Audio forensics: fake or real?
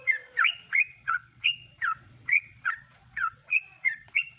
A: fake